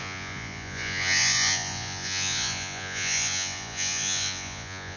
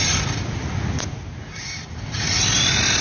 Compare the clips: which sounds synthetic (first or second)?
first